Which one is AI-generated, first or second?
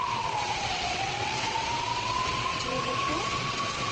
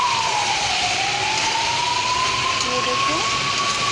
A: first